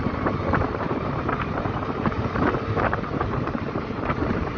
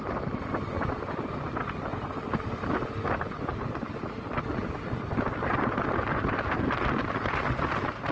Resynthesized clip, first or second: first